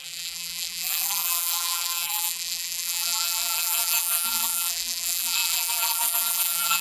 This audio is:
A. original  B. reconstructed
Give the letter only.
B